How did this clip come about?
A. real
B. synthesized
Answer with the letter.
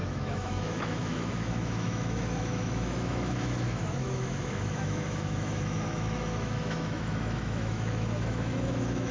B